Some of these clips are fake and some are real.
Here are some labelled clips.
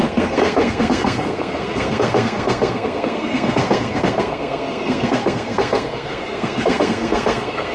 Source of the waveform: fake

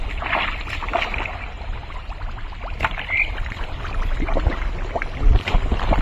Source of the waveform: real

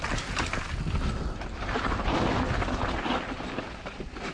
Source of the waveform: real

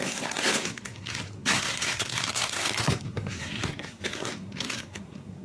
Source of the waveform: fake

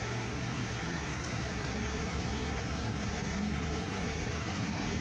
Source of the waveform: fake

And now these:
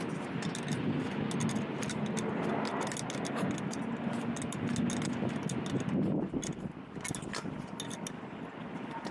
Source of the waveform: real